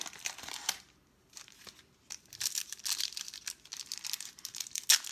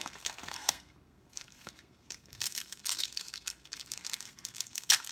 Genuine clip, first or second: first